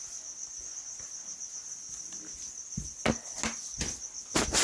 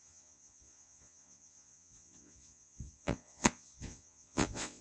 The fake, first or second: second